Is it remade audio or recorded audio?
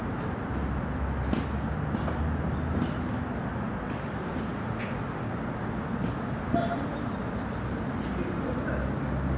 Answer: recorded